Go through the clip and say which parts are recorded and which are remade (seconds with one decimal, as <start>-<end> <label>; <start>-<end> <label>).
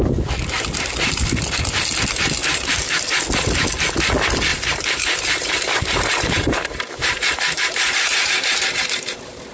0.0-2.4 recorded; 2.4-3.0 remade; 3.0-4.5 recorded; 4.5-8.8 remade; 8.8-9.5 recorded